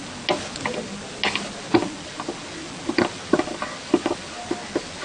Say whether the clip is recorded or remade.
recorded